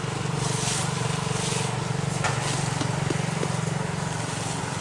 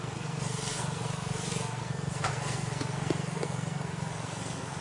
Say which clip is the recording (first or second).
first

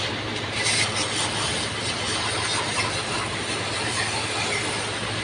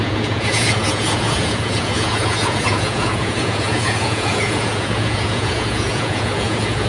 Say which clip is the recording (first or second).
first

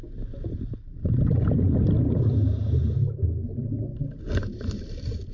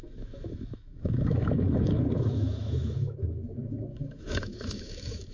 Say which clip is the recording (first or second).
first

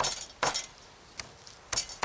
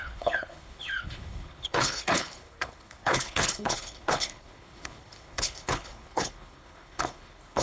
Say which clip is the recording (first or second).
first